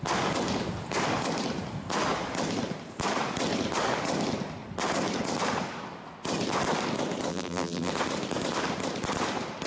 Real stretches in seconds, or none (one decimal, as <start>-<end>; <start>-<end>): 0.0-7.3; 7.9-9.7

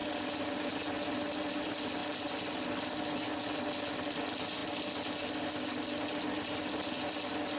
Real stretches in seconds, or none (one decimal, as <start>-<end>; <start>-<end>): 0.0-7.6

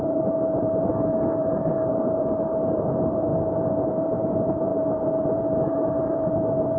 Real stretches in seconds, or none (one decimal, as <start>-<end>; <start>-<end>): 0.9-2.0; 3.3-3.9